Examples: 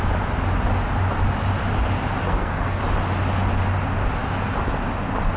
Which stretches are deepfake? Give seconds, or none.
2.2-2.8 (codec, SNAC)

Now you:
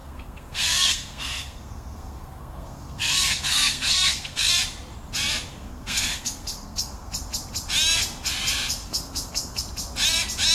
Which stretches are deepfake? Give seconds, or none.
0.0-4.5 (codec, SNAC); 5.5-7.1; 8.8-9.6

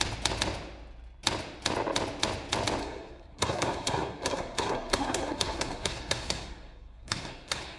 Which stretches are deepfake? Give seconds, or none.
2.8-7.8 (codec, SNAC)

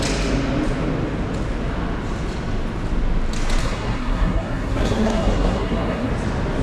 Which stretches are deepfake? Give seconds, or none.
3.6-6.1 (codec, SNAC)

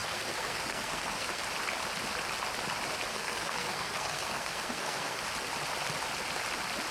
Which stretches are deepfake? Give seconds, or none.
0.0-1.4 (codec, SNAC); 3.1-5.2